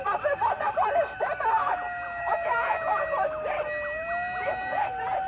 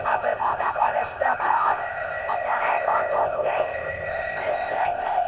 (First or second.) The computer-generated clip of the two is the second